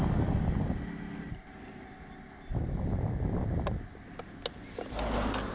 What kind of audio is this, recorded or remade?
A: recorded